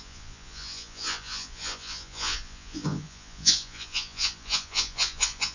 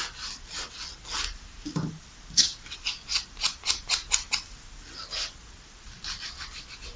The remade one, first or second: first